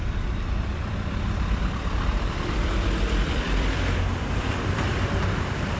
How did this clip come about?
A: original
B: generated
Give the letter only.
B